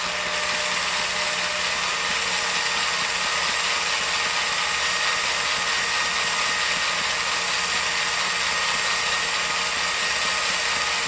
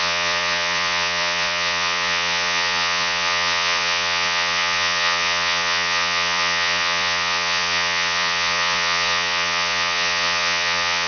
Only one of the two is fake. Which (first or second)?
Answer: second